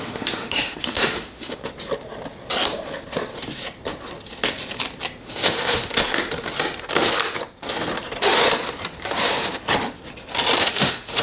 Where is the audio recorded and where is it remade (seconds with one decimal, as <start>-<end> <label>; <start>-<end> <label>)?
0.0-1.6 remade; 1.6-5.2 recorded; 5.2-6.0 remade; 6.0-10.6 recorded; 10.6-11.2 remade